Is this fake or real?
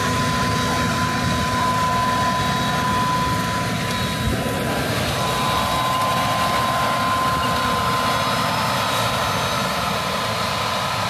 real